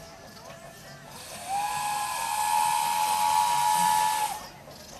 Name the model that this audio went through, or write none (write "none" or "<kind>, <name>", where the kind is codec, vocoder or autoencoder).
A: none